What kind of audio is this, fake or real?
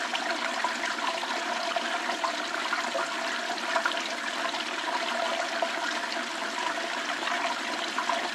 real